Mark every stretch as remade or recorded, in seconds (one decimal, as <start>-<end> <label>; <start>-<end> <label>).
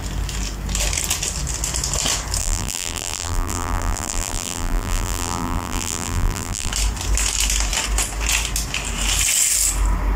0.0-2.4 recorded; 2.4-6.7 remade; 6.7-10.2 recorded